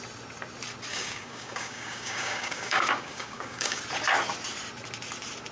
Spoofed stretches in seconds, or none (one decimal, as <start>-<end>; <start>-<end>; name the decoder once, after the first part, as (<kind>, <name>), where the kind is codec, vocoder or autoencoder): 0.9-3.8 (codec, DAC)